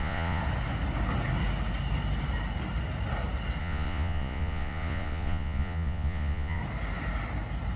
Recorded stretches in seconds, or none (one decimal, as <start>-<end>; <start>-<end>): 0.4-3.6; 6.6-7.8